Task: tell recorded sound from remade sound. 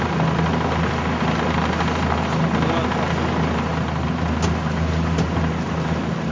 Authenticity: recorded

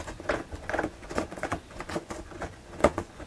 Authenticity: remade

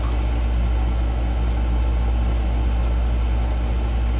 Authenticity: recorded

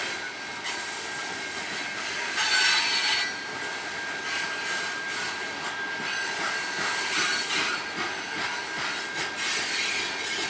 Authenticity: recorded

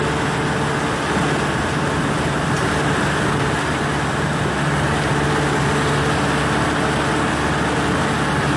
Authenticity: recorded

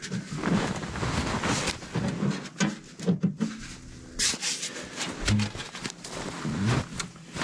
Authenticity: recorded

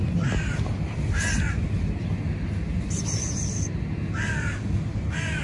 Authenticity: recorded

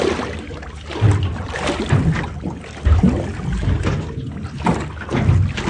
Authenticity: recorded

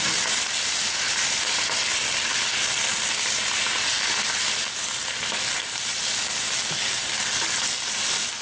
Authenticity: recorded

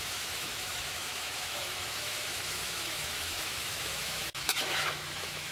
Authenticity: remade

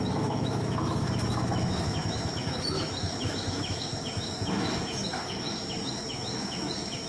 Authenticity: remade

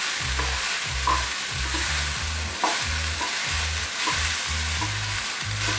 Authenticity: recorded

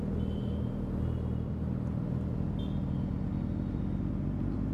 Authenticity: recorded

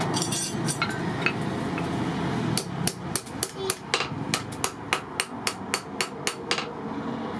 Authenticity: recorded